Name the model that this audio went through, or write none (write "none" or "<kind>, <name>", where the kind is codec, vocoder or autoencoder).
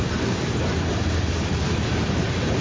vocoder, BigVGAN v2